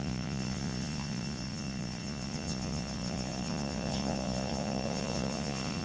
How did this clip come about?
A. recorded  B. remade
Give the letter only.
B